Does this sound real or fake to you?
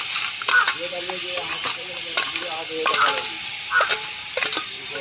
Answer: real